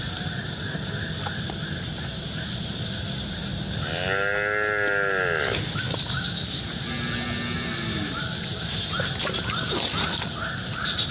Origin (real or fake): real